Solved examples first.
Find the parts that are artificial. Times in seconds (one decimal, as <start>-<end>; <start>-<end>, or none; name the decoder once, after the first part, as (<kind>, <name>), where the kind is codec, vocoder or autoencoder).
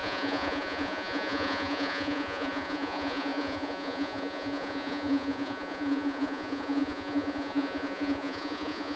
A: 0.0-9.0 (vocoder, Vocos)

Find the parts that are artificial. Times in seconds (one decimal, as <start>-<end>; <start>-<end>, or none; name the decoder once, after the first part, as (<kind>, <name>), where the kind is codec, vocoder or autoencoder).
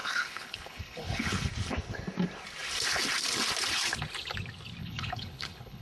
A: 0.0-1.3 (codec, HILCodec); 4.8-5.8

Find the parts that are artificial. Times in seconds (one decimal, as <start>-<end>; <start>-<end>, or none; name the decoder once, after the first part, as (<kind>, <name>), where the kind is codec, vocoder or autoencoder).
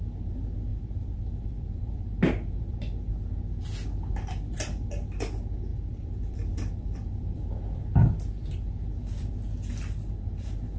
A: 0.7-2.8 (vocoder, BigVGAN v2); 5.7-8.5